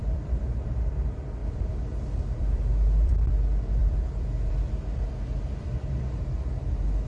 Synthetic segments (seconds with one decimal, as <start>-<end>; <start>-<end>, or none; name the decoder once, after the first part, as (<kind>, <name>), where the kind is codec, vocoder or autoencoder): 0.0-0.9 (vocoder, BigVGAN v2); 1.4-3.3; 3.8-4.5